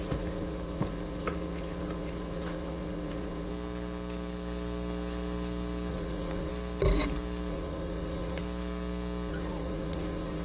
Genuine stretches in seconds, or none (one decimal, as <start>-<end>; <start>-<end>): 3.5-5.9; 6.5-7.5; 8.4-9.3